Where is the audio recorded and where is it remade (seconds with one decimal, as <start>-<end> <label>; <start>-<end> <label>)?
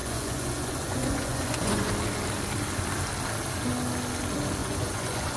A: 0.0-1.9 remade; 1.9-4.6 recorded; 4.6-5.4 remade